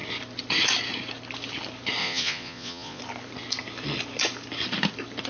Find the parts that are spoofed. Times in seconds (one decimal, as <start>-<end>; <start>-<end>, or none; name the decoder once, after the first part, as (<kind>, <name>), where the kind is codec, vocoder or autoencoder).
2.0-3.0 (vocoder, Vocos)